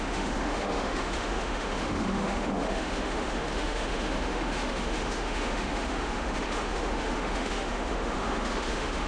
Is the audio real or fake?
fake